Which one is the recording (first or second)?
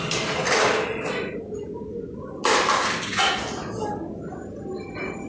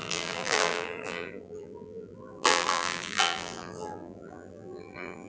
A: first